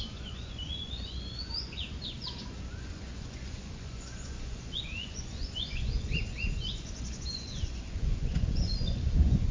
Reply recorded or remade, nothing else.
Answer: remade